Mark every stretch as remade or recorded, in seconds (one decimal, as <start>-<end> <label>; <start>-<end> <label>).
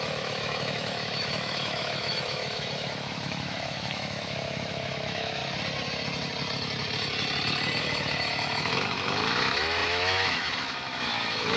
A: 0.0-5.4 remade; 5.4-7.8 recorded; 7.8-11.6 remade